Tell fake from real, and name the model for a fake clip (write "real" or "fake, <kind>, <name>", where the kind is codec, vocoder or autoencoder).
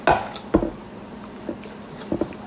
real